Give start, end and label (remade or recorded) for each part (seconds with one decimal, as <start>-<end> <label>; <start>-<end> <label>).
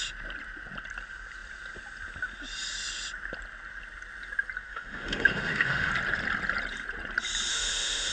0.0-4.7 recorded; 4.7-5.9 remade; 5.9-7.5 recorded; 7.5-8.1 remade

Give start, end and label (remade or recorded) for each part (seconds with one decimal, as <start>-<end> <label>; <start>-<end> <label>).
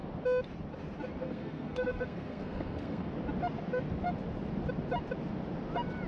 0.0-1.2 recorded; 1.2-3.1 remade; 3.1-6.1 recorded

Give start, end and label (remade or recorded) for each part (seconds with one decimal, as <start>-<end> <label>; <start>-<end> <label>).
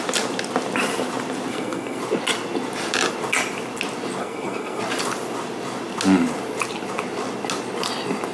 0.0-1.5 recorded; 1.5-2.0 remade; 2.0-4.2 recorded; 4.2-4.8 remade; 4.8-8.3 recorded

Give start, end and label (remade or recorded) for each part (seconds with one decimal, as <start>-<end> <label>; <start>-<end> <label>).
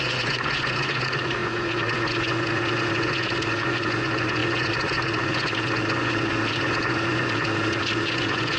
0.0-8.6 remade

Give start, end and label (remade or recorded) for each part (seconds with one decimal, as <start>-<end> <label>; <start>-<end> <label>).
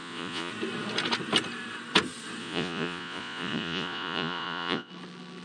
0.0-0.5 remade; 0.5-2.4 recorded; 2.4-4.9 remade; 4.9-5.4 recorded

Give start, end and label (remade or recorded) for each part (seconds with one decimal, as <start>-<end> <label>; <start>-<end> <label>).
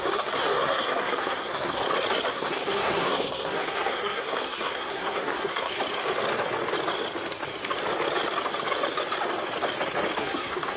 0.0-1.8 remade; 1.8-2.3 recorded; 2.3-5.7 remade; 5.7-10.2 recorded; 10.2-10.8 remade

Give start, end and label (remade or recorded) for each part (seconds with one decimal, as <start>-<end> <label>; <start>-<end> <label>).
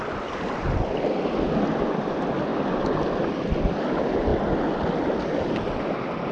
0.0-6.3 recorded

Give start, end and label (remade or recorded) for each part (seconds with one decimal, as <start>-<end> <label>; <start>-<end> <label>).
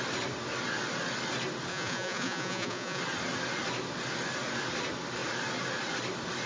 0.0-1.7 recorded; 1.7-3.0 remade; 3.0-6.5 recorded